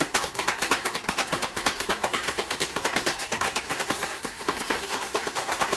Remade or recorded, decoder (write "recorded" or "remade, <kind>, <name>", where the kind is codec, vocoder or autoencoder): remade, codec, SNAC